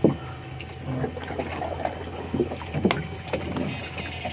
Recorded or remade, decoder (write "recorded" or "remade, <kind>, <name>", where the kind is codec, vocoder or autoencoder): recorded